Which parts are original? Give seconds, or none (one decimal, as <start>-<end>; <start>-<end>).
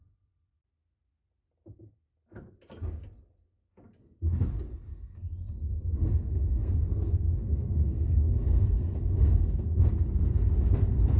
0.0-4.9; 9.9-11.2